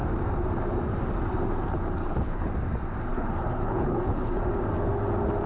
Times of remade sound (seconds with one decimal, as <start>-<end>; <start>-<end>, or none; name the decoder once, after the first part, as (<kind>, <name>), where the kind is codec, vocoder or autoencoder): 2.0-2.5 (codec, HILCodec); 3.1-4.3